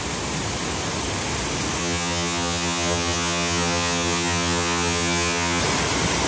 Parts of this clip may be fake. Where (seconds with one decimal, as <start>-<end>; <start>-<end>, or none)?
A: 1.8-5.6